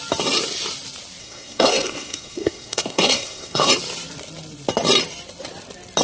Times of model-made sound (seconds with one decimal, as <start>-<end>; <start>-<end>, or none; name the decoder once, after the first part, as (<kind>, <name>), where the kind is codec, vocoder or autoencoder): 1.2-3.7 (codec, SNAC)